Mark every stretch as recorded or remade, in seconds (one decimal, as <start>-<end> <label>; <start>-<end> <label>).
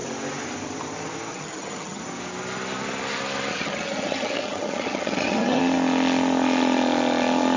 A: 0.0-1.3 recorded; 1.3-2.0 remade; 2.0-3.5 recorded; 3.5-5.6 remade; 5.6-7.6 recorded